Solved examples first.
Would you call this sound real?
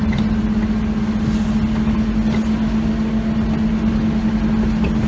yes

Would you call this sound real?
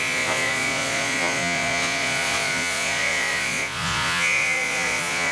no